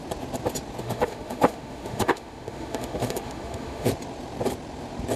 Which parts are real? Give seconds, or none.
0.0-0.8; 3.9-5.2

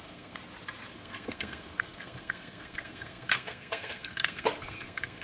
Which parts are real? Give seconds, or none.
0.4-0.9

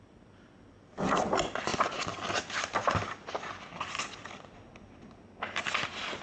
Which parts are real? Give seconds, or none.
0.0-6.2